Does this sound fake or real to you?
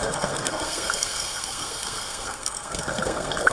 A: fake